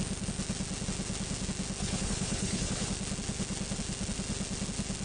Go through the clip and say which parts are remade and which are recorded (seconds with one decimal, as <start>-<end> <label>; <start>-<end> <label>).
0.0-1.8 recorded; 1.8-2.9 remade; 2.9-5.0 recorded